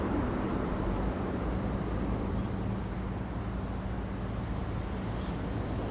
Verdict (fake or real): real